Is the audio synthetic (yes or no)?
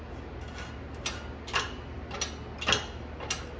no